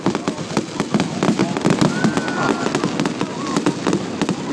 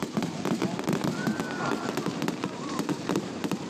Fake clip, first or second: second